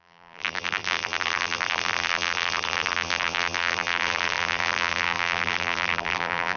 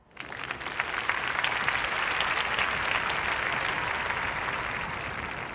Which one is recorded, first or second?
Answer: second